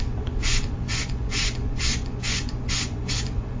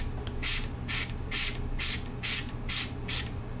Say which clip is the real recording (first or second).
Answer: second